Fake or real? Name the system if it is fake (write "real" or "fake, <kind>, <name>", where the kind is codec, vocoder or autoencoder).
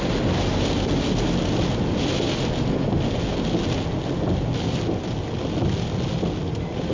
real